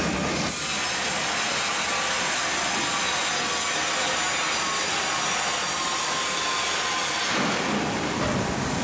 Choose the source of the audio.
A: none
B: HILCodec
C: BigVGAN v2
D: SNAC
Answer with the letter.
A